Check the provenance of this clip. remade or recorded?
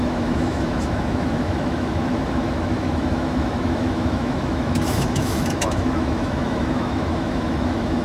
remade